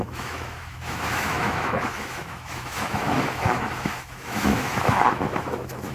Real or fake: fake